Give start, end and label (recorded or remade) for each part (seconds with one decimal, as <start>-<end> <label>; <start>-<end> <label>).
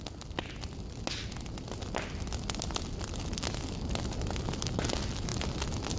0.0-6.0 recorded